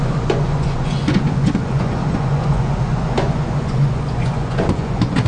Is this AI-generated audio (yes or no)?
yes